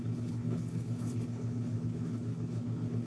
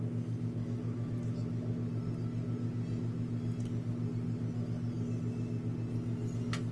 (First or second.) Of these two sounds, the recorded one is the second